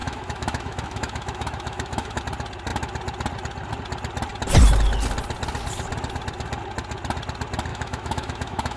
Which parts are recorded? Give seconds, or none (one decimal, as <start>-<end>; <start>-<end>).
2.2-7.7